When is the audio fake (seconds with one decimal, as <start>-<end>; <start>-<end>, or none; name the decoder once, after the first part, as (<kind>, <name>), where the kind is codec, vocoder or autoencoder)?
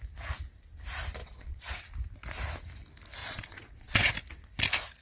1.2-1.7 (vocoder, Vocos); 3.2-4.1